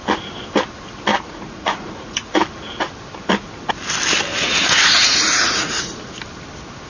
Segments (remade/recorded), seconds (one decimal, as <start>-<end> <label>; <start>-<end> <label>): 0.0-1.1 recorded; 1.1-2.3 remade; 2.3-4.3 recorded; 4.3-6.0 remade; 6.0-6.9 recorded